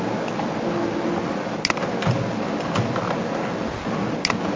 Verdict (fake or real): real